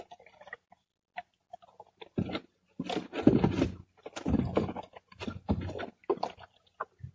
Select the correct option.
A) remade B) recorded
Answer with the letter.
B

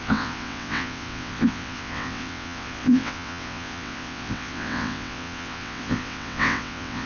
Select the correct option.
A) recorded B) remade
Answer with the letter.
B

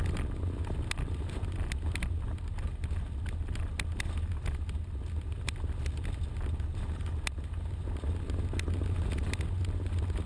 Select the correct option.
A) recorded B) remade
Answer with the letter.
A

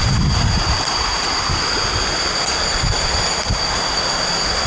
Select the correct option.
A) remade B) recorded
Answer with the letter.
B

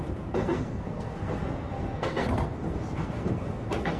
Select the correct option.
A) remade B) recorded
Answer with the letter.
A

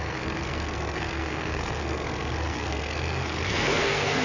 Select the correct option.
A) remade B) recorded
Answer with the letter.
A